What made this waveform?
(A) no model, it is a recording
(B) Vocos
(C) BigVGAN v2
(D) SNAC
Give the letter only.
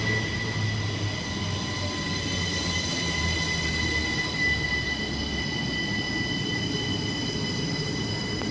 A